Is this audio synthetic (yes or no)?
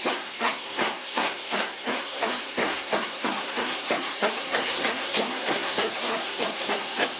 yes